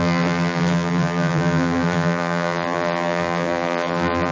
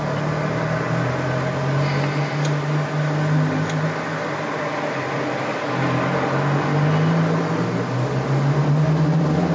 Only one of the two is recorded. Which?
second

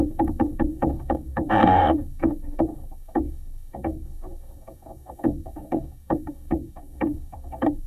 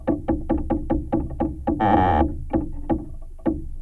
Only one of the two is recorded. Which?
second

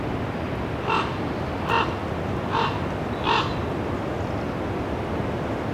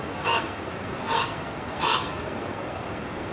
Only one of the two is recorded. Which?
first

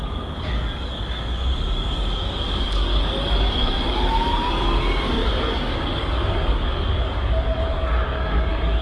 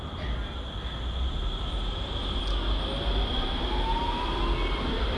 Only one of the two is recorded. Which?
second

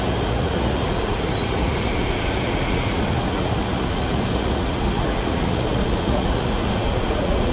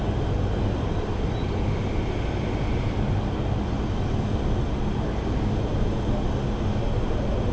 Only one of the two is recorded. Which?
second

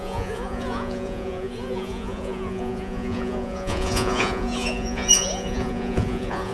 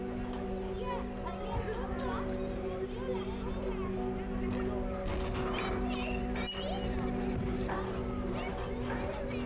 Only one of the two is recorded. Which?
second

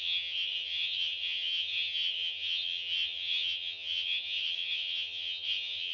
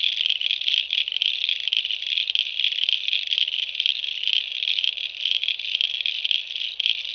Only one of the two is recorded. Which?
second